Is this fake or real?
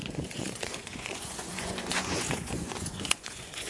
fake